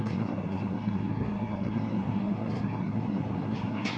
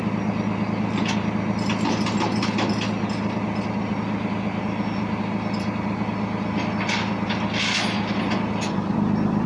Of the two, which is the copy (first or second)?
first